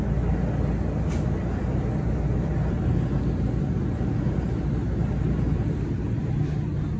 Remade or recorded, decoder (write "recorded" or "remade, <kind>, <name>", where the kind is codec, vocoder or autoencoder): recorded